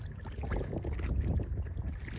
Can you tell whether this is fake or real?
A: real